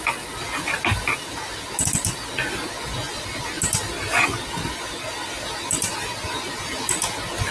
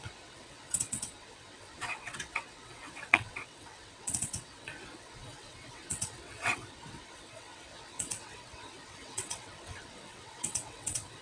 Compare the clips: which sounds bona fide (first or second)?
first